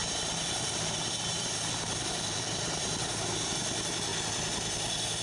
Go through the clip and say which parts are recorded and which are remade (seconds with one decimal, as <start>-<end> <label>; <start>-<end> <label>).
0.0-3.1 remade; 3.1-5.2 recorded